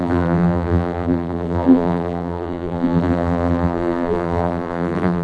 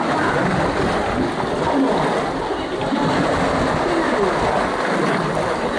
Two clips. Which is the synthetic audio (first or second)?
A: first